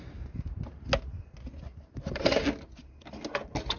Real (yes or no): yes